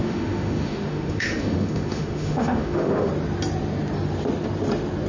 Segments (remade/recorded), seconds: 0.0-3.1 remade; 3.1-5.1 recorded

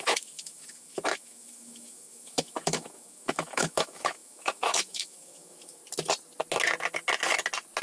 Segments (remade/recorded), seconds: 0.0-5.8 remade; 5.8-7.8 recorded

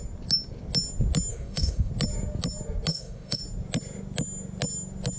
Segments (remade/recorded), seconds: 0.0-1.3 recorded; 1.3-1.9 remade; 1.9-2.9 recorded; 2.9-3.4 remade; 3.4-5.2 recorded

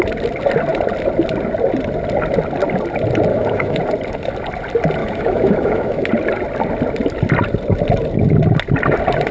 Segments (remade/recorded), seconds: 0.0-3.3 recorded; 3.3-3.8 remade; 3.8-5.0 recorded; 5.0-6.1 remade; 6.1-9.3 recorded